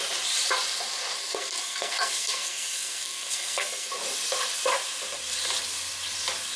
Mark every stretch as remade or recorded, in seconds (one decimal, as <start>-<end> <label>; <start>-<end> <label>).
0.0-1.2 recorded; 1.2-3.9 remade; 3.9-6.6 recorded